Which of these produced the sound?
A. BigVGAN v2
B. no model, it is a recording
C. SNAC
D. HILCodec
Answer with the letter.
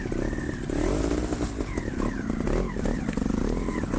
B